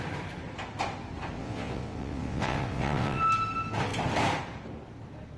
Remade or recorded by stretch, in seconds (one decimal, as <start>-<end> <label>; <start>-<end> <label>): 0.0-1.4 recorded; 1.4-3.2 remade; 3.2-5.4 recorded